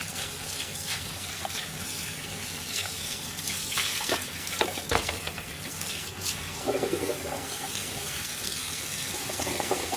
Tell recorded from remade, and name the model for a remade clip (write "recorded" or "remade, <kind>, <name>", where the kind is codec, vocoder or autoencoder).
remade, codec, SNAC